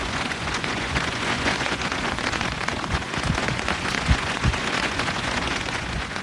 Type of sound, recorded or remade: remade